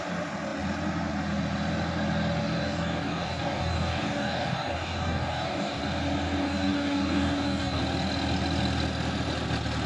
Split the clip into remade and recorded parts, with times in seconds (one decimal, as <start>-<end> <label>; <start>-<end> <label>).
0.0-2.4 recorded; 2.4-5.8 remade; 5.8-6.4 recorded; 6.4-7.8 remade; 7.8-9.9 recorded